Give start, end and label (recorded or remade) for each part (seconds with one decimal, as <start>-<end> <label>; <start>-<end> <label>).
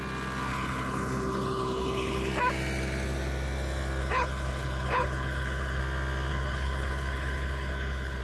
0.0-0.5 recorded; 0.5-2.3 remade; 2.3-4.0 recorded; 4.0-5.8 remade; 5.8-6.3 recorded; 6.3-8.2 remade